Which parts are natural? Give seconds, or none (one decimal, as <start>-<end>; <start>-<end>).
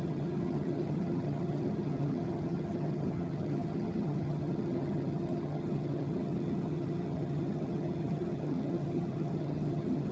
none